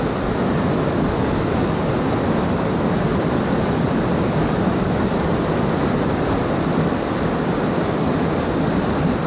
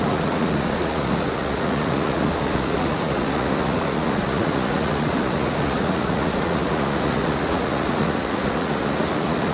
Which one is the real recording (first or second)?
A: first